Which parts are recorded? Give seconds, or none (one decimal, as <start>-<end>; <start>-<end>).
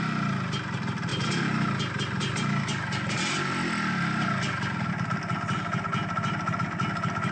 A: 0.0-7.3